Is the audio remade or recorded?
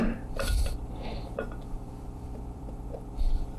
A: remade